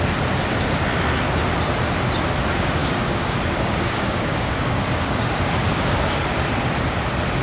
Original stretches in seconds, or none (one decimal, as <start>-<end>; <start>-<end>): 0.0-2.8; 6.1-7.4